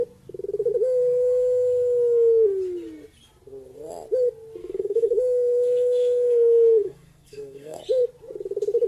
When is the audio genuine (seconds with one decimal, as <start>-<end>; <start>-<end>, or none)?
0.0-4.6; 7.8-8.9